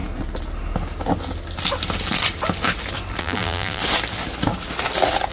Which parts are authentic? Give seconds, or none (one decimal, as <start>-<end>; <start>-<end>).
0.0-3.2; 3.8-5.3